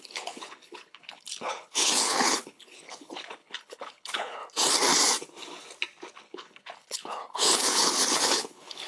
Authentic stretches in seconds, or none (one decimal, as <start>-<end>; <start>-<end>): 4.4-6.2